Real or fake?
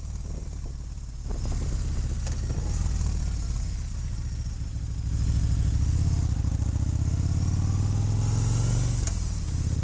real